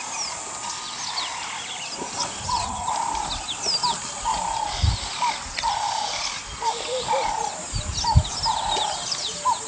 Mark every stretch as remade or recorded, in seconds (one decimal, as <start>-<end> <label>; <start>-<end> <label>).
0.0-2.4 recorded; 2.4-2.9 remade; 2.9-9.7 recorded